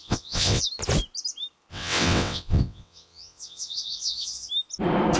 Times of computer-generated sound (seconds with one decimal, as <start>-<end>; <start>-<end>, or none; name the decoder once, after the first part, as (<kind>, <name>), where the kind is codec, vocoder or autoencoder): 0.0-0.6 (vocoder, WaveNeXt); 1.7-4.5

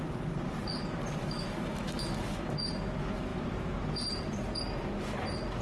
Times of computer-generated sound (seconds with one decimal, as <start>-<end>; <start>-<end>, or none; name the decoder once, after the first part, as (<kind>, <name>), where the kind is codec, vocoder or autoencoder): 1.2-2.5 (autoencoder, DAC-VAE)

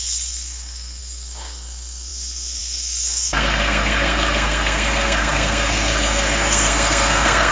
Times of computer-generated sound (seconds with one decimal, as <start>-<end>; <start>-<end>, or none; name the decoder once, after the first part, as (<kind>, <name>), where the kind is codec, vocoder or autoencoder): 0.0-7.5 (codec, SNAC)

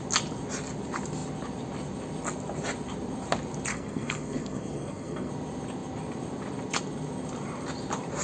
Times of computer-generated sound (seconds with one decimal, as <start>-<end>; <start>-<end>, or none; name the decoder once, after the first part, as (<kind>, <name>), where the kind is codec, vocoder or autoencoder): 3.7-5.3 (codec, SNAC)

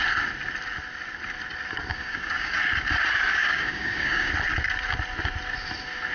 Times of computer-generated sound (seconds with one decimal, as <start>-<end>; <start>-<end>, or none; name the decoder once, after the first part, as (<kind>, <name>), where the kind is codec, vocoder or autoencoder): 1.9-2.5 (codec, DAC); 3.3-4.3

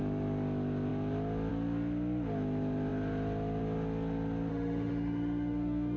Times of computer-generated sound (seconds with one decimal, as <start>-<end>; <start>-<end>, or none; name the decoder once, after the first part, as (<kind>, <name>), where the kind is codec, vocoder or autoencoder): 4.5-6.0 (autoencoder, DAC-VAE)

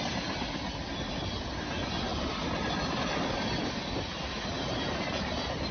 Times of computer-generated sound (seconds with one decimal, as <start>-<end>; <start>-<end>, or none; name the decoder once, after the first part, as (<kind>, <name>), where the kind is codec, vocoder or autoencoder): none

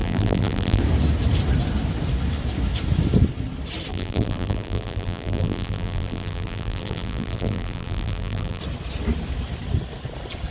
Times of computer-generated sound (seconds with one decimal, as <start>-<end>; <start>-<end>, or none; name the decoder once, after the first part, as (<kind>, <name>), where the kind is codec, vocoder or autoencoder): 0.0-0.8 (vocoder, BigVGAN v2); 3.9-8.6